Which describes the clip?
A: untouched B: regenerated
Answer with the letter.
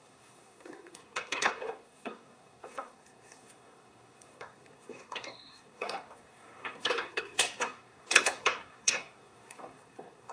B